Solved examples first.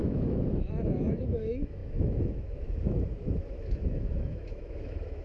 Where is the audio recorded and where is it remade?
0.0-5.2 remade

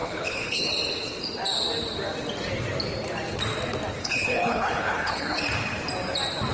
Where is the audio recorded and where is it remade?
0.0-0.7 remade; 0.7-4.0 recorded; 4.0-5.4 remade; 5.4-6.5 recorded

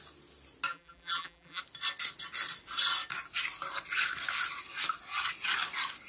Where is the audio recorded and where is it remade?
0.0-0.7 recorded; 0.7-1.6 remade; 1.6-6.1 recorded

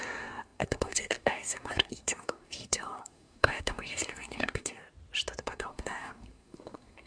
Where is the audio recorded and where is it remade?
0.0-4.8 remade; 4.8-5.4 recorded; 5.4-7.1 remade